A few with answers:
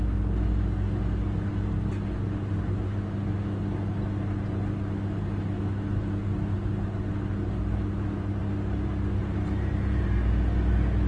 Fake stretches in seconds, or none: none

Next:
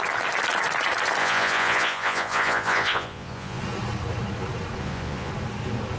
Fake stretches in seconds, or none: 1.2-3.6 (vocoder, Vocos); 4.8-5.3

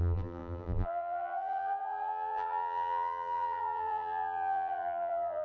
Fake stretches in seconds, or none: 0.0-5.4 (vocoder, BigVGAN v2)

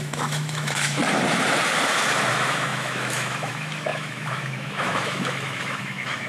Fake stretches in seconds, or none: 0.0-1.0 (autoencoder, DAC-VAE); 2.3-6.3

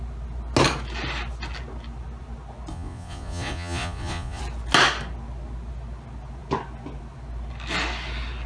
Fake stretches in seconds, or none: 2.7-4.4 (vocoder, Vocos)

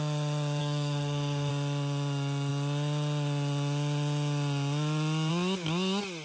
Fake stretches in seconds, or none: 0.6-1.5 (codec, SNAC)

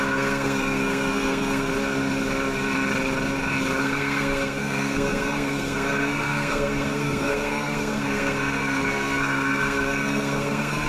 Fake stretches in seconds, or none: 0.0-1.7 (codec, SNAC); 3.8-10.9